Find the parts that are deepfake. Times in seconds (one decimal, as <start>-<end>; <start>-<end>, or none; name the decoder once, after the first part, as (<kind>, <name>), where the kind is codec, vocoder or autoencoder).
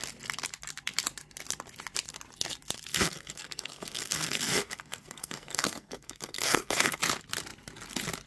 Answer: 2.9-7.0 (codec, SNAC)